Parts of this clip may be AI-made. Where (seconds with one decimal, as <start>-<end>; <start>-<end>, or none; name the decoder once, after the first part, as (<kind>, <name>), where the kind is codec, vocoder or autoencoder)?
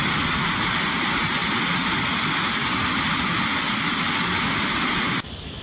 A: none